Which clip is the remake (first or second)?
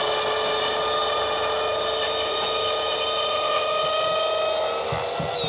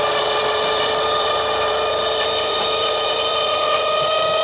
second